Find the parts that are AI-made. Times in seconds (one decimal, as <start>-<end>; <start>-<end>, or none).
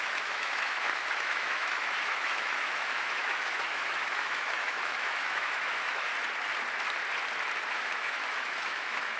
0.0-6.1; 7.7-9.2